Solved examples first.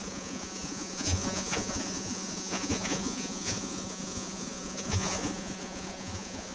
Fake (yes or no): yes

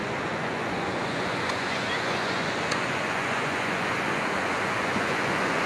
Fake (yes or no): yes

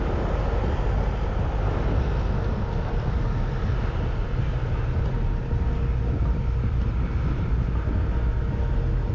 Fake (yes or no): no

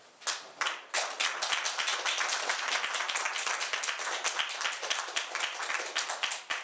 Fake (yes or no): no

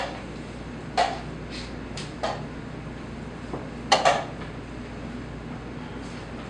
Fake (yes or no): no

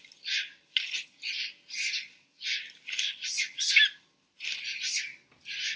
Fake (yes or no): no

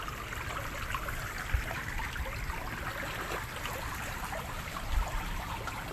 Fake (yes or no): no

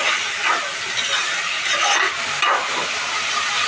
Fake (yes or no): no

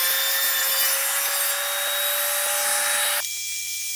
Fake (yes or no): no